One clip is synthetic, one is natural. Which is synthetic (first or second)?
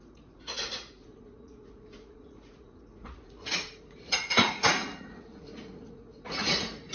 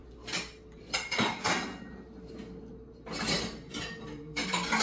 first